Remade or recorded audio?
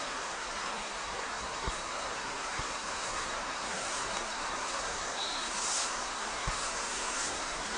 remade